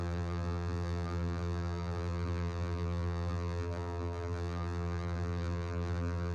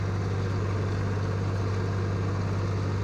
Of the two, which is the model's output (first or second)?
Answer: first